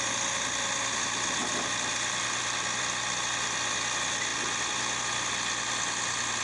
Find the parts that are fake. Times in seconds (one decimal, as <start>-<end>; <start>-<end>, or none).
none